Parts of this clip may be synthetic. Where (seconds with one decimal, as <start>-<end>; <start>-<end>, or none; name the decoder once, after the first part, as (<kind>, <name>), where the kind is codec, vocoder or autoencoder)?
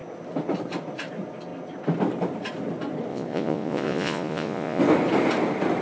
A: 3.1-4.8 (vocoder, Vocos)